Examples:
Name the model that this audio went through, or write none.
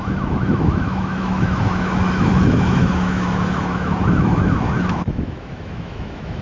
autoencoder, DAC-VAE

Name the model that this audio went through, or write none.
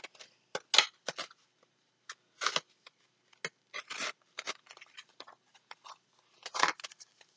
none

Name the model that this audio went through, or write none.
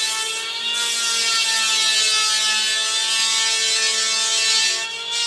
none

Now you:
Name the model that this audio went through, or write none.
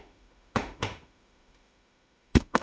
autoencoder, DAC-VAE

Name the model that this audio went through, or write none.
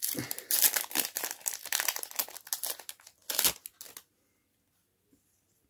none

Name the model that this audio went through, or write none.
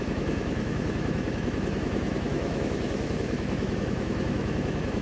autoencoder, DAC-VAE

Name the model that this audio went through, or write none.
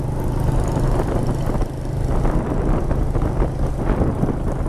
none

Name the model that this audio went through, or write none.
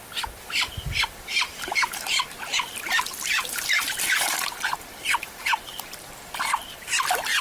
none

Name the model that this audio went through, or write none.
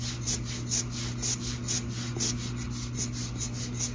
none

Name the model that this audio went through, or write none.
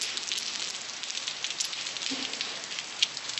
none